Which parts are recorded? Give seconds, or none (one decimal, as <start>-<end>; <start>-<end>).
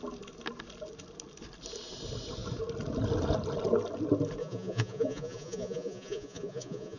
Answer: 0.0-4.4